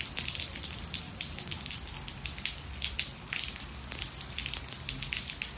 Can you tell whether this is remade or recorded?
recorded